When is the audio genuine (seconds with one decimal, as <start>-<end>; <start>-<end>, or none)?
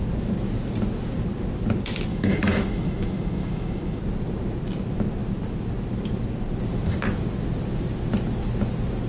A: 0.0-2.1; 4.0-9.1